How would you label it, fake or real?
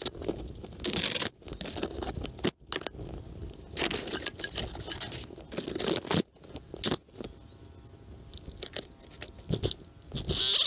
real